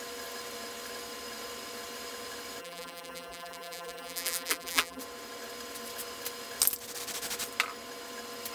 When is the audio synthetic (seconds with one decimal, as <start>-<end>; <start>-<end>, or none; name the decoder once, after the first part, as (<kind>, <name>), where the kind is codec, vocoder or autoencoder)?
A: 2.6-5.0 (vocoder, BigVGAN v2)